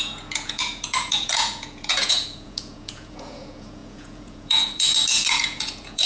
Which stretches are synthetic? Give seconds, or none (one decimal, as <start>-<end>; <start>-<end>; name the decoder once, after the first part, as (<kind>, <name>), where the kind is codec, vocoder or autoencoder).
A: 0.0-6.1 (vocoder, Vocos)